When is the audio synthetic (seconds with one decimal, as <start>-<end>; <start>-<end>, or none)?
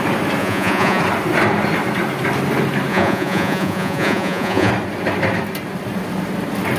0.4-1.0; 2.9-4.7